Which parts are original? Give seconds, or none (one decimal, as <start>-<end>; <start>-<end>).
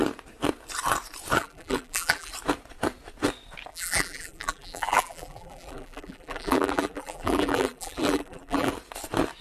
0.0-1.4; 2.3-3.7; 8.7-9.4